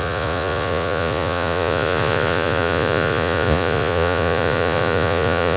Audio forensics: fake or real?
fake